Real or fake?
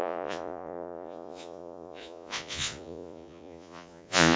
fake